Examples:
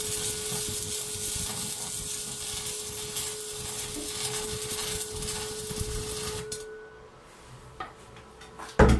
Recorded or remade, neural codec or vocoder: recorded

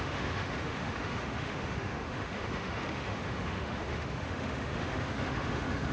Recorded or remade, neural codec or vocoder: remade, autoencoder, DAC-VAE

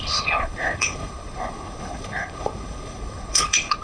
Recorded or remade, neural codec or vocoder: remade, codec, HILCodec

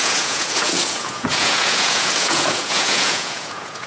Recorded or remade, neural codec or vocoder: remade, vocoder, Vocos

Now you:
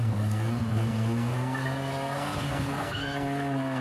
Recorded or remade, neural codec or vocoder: remade, codec, SNAC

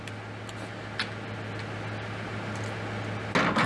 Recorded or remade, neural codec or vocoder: recorded